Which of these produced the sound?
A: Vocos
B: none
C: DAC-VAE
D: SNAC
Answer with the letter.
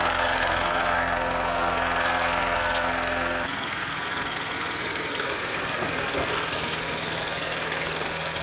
D